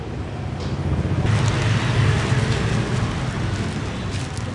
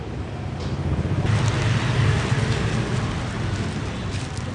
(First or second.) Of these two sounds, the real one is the first